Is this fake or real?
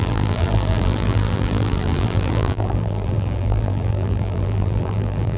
fake